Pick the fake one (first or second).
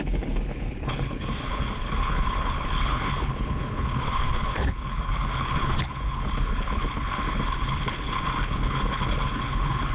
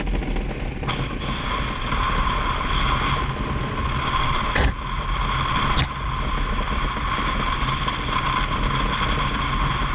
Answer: first